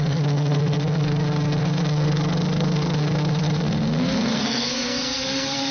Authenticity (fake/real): fake